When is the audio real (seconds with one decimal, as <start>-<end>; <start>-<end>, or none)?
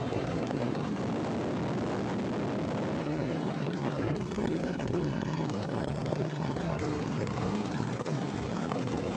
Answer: 1.0-3.0